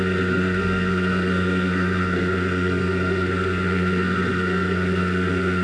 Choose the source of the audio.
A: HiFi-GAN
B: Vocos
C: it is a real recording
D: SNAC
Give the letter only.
D